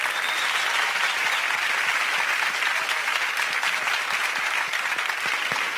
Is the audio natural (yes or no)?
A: yes